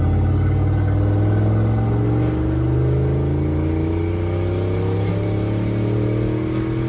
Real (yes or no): yes